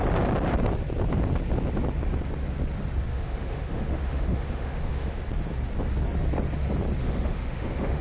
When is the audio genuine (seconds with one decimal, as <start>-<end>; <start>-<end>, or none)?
0.0-3.1; 5.2-7.0